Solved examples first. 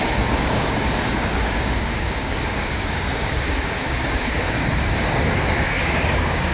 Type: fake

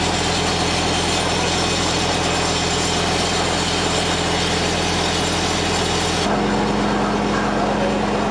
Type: real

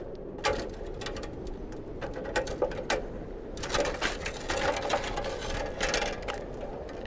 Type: real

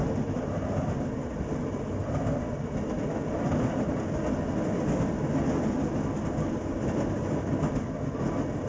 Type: real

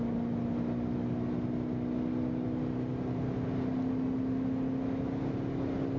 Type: real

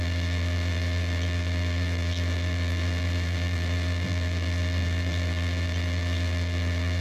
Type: fake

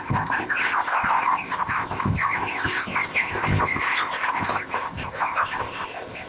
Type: fake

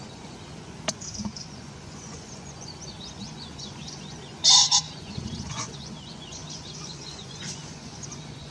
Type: fake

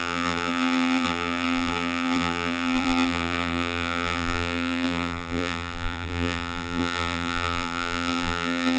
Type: fake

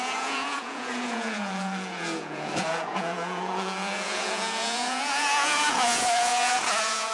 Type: fake